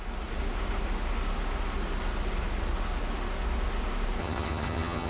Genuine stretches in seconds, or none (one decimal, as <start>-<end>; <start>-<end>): 0.0-4.2